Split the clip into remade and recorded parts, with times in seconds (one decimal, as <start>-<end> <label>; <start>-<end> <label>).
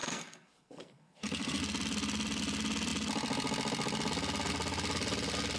0.0-1.6 remade; 1.6-5.6 recorded